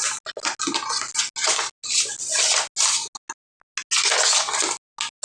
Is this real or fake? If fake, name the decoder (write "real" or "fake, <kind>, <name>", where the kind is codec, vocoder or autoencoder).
real